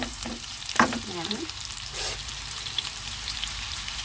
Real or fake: fake